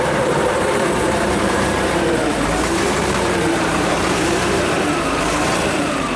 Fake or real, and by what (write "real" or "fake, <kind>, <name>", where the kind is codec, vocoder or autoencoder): fake, vocoder, BigVGAN v2